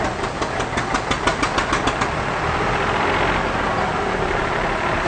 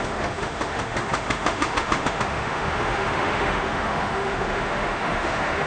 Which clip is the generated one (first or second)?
second